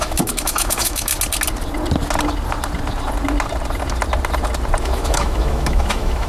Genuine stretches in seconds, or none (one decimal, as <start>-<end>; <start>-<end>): 1.1-4.8